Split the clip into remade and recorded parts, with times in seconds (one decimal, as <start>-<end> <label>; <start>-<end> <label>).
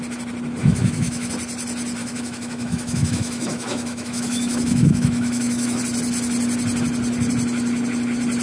0.0-0.6 recorded; 0.6-1.3 remade; 1.3-2.0 recorded; 2.0-5.8 remade; 5.8-8.4 recorded